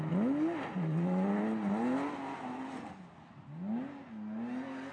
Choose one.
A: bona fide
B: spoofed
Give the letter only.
A